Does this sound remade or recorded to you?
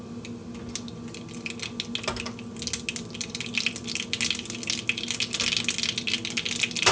recorded